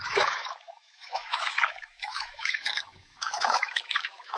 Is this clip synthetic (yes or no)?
yes